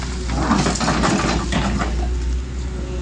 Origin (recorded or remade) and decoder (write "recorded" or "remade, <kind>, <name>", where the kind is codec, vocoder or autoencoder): recorded